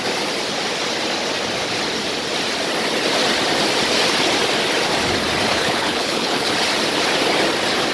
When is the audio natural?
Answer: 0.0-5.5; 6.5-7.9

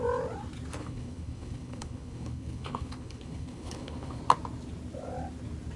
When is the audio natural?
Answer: 0.0-0.8; 4.2-5.8

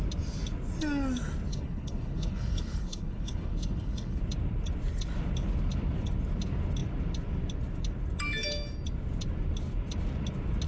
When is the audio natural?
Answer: 0.0-1.5; 4.2-10.7

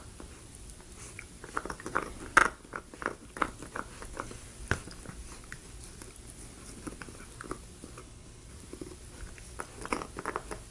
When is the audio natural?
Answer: 0.0-8.0; 8.5-10.7

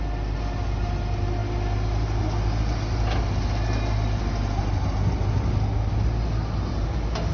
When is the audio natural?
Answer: 0.0-7.3

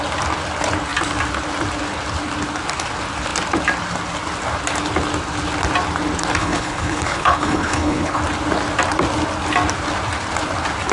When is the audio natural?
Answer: 0.0-6.4; 8.2-10.9

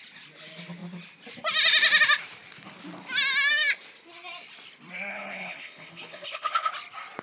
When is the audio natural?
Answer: 0.0-5.1; 6.7-7.2